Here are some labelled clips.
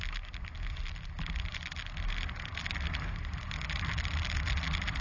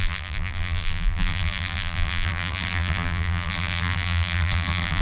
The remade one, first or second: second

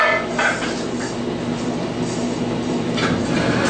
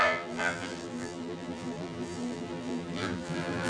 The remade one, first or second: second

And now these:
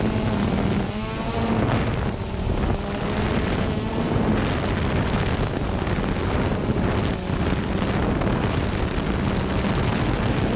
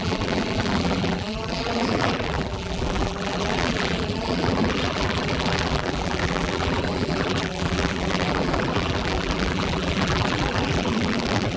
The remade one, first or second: second